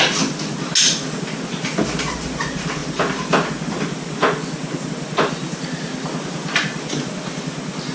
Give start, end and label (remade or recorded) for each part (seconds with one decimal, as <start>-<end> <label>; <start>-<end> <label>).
0.0-7.9 recorded